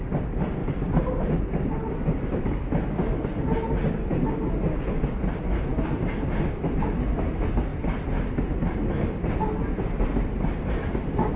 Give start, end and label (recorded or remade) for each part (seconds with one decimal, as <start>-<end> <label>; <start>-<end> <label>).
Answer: 0.0-11.4 recorded